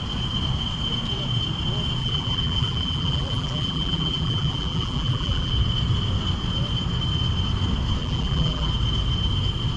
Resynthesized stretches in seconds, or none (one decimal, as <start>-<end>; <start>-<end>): 2.0-5.5; 8.0-8.7